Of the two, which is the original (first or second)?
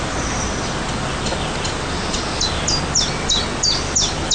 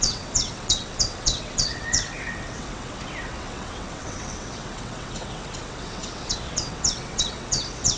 first